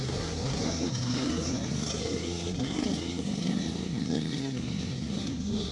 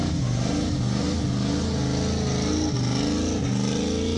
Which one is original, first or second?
second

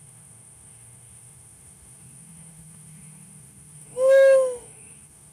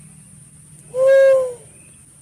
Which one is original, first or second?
second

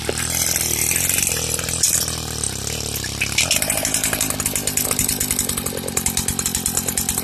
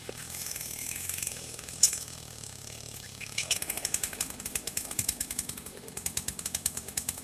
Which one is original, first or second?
first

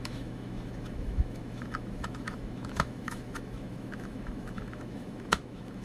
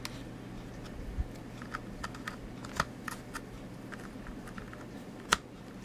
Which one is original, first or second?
second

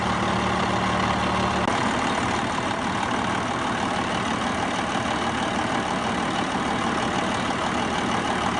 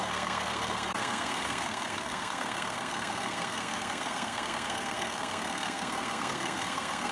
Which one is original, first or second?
first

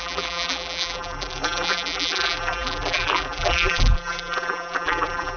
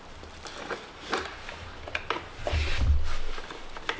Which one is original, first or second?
second